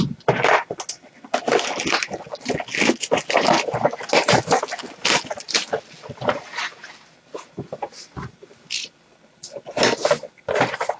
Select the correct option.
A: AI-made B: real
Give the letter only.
B